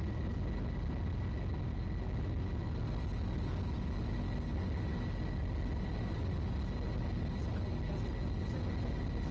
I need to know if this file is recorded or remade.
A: recorded